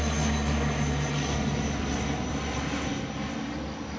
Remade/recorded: recorded